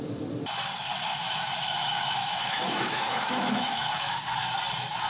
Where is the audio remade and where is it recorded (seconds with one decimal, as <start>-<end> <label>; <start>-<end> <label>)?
0.0-1.1 recorded; 1.1-4.2 remade; 4.2-5.1 recorded